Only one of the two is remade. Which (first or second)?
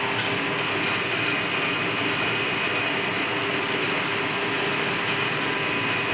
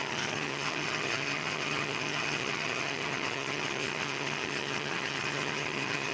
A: second